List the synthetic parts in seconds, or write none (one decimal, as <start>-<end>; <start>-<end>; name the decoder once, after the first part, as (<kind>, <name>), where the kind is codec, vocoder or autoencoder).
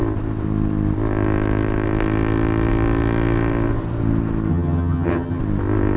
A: 4.5-5.4 (vocoder, HiFi-GAN)